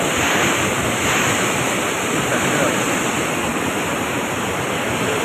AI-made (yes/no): no